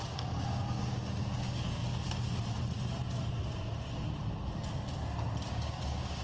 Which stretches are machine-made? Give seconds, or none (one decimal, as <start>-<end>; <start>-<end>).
0.0-1.8; 5.5-6.2